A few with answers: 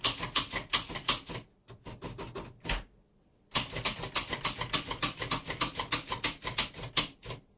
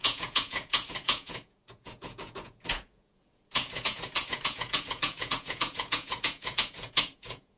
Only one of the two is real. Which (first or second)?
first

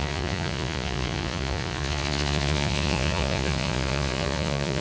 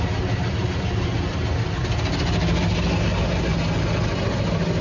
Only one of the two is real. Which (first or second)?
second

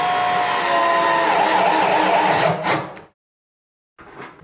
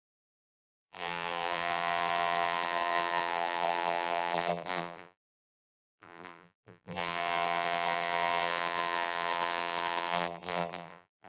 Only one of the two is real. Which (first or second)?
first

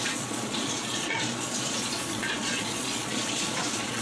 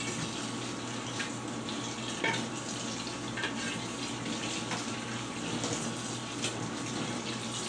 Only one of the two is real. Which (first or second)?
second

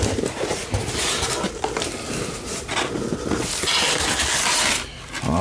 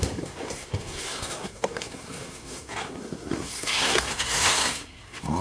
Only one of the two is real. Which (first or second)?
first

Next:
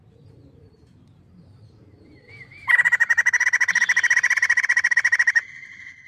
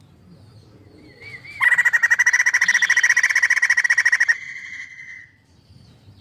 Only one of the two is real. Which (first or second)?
second